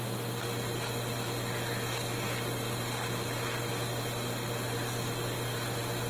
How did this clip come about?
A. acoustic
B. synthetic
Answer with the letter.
A